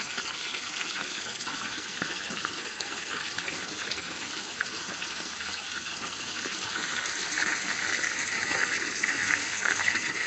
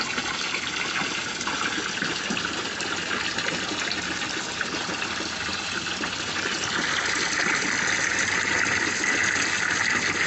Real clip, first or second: second